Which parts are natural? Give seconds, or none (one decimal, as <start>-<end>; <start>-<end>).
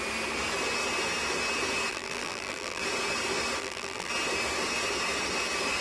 0.0-1.9; 2.8-3.6; 4.1-5.8